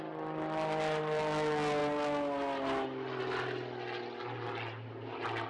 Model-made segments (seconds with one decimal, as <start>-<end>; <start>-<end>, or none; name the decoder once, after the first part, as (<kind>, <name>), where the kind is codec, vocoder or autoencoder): none